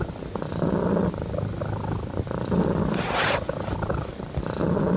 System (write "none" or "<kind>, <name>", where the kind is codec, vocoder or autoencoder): none